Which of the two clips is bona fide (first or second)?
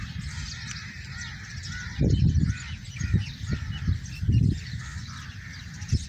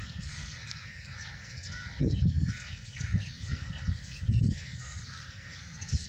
first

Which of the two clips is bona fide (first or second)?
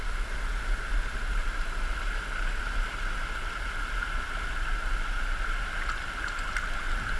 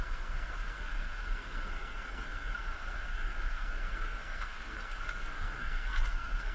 first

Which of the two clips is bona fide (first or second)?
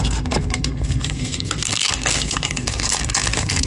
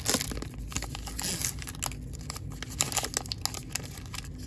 second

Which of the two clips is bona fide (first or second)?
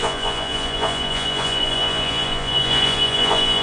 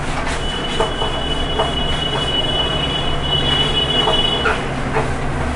second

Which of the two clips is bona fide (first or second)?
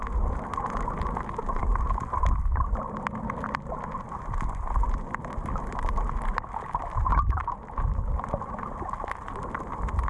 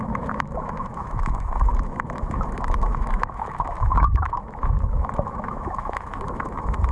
first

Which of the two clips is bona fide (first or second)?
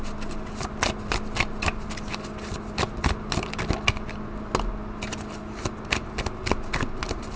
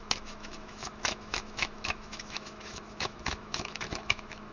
first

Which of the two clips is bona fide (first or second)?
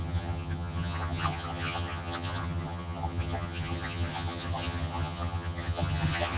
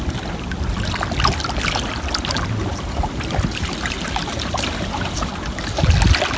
second